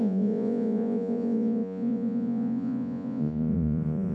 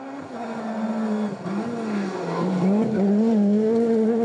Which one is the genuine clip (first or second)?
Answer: second